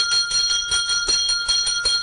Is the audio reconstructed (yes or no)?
no